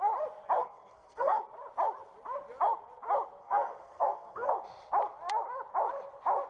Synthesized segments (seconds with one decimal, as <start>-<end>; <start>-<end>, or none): 0.6-1.4; 3.4-4.5